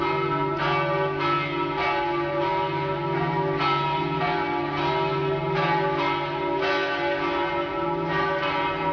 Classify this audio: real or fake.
real